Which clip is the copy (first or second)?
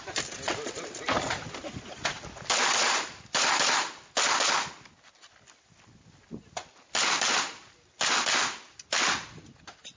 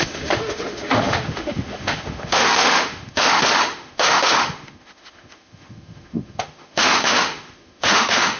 second